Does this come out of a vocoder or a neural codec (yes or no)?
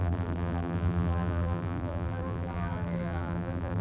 yes